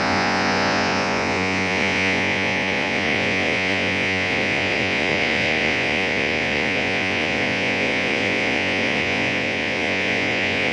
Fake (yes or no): yes